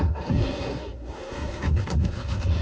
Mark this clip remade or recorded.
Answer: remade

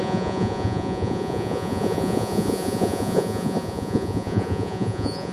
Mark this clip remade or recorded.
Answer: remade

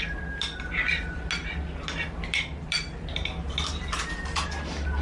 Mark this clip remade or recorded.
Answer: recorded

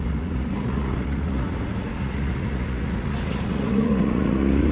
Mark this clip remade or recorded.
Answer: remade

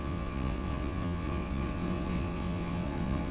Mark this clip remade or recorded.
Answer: remade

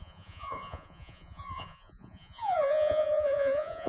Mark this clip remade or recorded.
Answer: remade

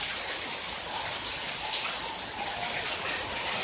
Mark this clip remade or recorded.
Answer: recorded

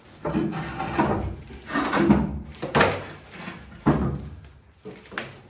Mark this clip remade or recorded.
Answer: recorded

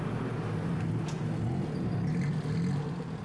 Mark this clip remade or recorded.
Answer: recorded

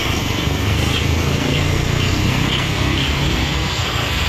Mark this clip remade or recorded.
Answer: remade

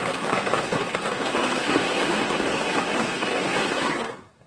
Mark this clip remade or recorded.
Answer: remade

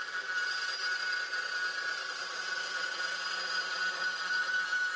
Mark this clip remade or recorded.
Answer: recorded